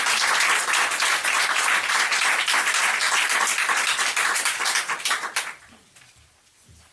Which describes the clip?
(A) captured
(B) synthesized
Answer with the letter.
A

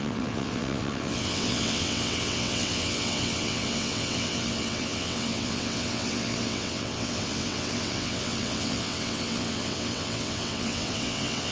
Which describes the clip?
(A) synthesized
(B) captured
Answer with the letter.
A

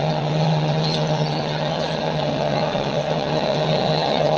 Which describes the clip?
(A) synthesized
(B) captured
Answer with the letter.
A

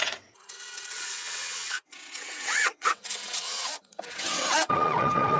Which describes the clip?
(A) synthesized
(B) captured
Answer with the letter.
A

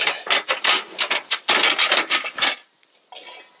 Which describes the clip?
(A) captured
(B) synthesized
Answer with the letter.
A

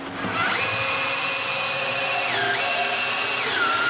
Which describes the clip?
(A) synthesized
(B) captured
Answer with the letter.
B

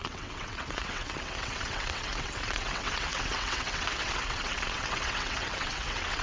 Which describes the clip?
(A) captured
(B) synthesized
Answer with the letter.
B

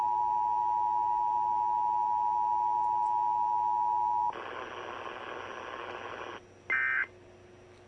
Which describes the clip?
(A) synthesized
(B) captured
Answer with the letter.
B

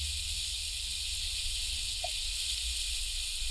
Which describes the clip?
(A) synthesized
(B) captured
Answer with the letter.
B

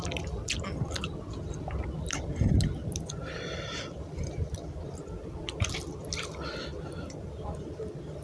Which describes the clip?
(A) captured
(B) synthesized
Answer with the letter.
A